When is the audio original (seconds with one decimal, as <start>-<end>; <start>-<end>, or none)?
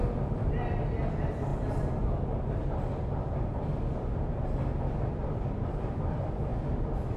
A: 0.0-7.2